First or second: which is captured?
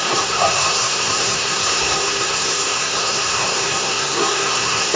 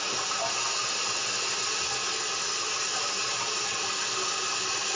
second